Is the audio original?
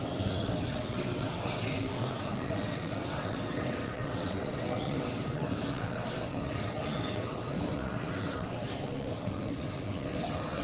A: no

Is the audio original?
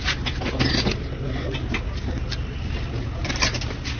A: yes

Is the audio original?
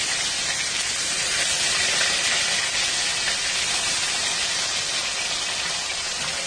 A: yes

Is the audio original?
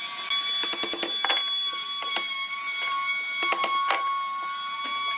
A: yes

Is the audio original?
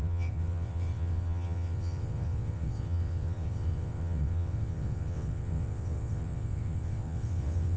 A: no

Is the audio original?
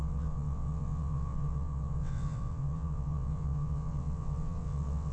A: no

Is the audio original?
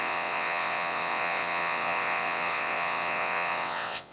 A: no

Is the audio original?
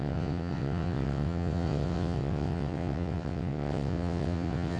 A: no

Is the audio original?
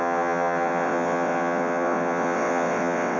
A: no